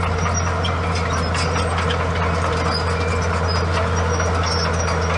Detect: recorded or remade recorded